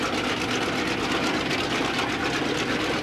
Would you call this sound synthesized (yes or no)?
no